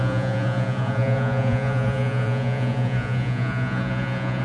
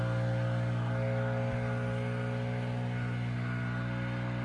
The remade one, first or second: first